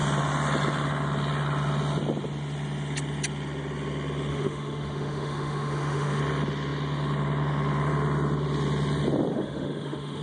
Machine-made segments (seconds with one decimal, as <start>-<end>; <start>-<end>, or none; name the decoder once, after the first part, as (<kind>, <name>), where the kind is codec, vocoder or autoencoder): 4.3-6.2 (autoencoder, DAC-VAE); 9.3-10.2